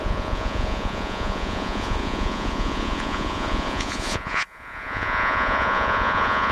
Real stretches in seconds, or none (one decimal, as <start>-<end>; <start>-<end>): none